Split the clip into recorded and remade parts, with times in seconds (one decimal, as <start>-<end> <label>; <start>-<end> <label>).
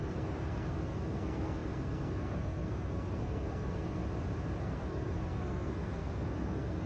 0.0-4.0 remade; 4.0-4.6 recorded; 4.6-6.9 remade